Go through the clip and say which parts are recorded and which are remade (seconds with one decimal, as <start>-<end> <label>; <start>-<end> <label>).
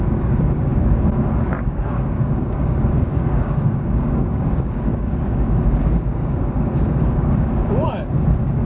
0.0-8.6 remade